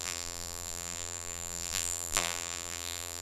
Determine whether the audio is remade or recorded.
remade